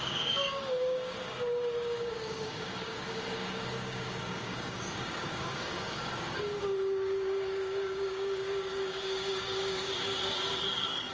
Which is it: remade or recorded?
remade